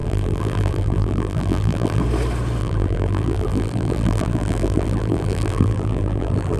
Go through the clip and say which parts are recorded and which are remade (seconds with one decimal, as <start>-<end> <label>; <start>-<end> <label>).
0.0-2.0 remade; 2.0-2.6 recorded; 2.6-6.6 remade